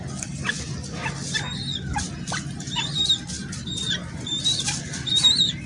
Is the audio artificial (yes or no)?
no